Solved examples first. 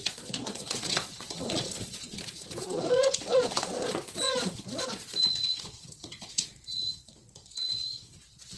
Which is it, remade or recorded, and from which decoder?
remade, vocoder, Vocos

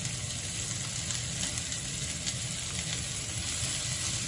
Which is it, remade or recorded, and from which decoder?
recorded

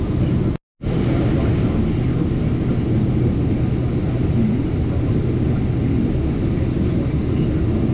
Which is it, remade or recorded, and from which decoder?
recorded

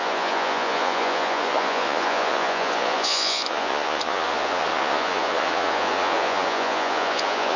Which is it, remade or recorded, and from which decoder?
remade, vocoder, Vocos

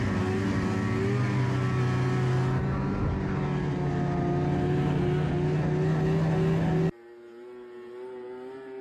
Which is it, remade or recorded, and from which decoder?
recorded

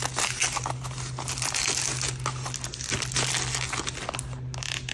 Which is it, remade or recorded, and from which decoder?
recorded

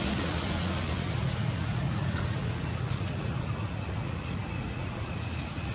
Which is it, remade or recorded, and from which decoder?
remade, vocoder, Vocos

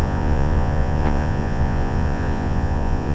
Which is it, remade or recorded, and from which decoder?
remade, vocoder, Vocos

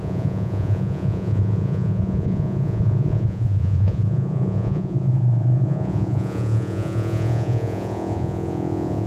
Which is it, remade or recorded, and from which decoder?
remade, vocoder, Vocos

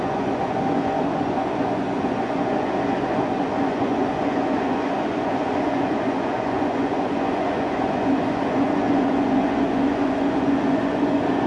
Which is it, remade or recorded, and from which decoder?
remade, vocoder, Vocos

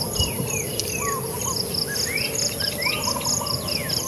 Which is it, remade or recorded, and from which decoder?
recorded